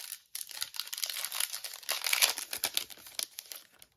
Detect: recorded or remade recorded